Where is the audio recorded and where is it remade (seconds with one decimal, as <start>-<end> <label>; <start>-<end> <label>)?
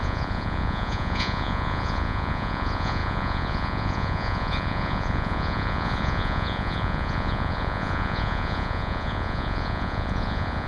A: 0.0-10.7 remade